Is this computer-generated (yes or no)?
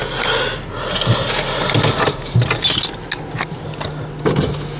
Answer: no